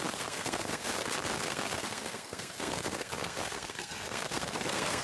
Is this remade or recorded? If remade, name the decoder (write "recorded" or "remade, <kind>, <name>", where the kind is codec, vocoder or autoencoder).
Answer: remade, codec, SNAC